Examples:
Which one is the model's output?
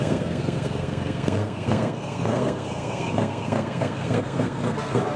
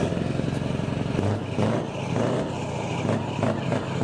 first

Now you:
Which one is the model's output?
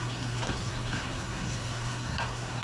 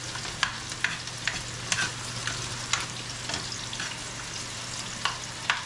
first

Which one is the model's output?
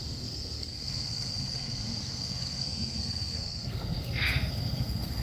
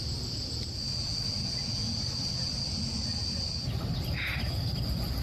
first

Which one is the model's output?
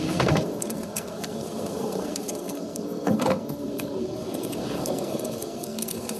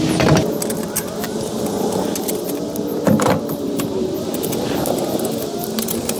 first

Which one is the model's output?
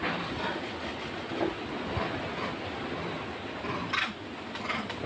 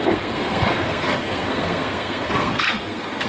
second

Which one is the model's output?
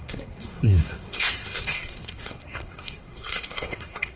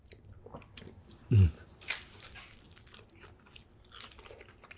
first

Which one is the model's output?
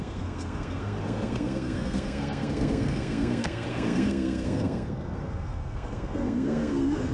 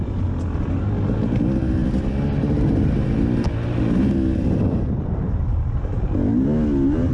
first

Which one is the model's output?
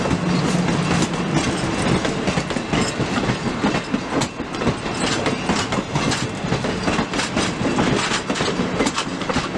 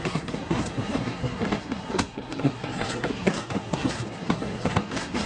second